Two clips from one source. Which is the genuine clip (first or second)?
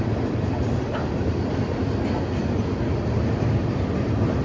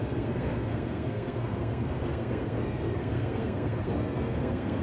first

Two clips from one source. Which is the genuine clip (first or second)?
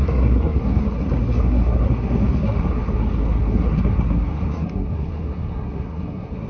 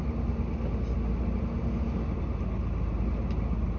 second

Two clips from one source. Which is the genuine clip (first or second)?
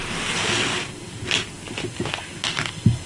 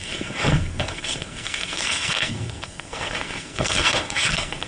first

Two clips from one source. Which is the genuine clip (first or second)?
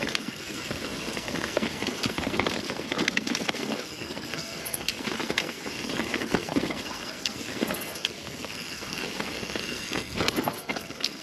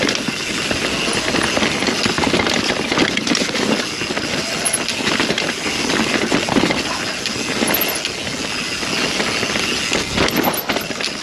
second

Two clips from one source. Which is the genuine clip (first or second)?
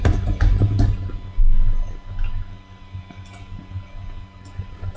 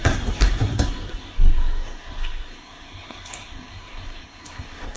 first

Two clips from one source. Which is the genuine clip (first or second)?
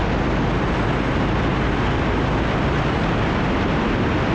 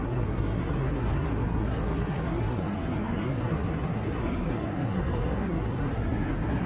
first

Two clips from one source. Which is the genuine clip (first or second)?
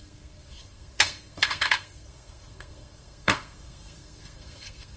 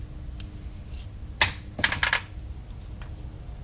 second